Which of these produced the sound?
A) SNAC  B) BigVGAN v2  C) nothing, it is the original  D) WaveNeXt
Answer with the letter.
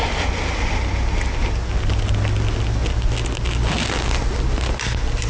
C